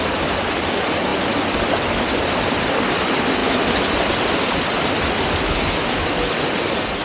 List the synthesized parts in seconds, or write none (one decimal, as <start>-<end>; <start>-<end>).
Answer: none